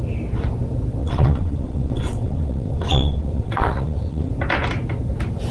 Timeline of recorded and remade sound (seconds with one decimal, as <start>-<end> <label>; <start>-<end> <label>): 0.0-1.0 recorded; 1.0-4.3 remade; 4.3-5.5 recorded